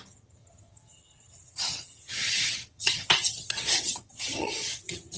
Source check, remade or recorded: remade